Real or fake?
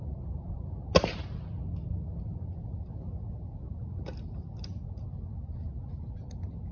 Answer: real